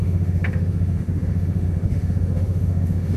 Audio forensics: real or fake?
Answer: fake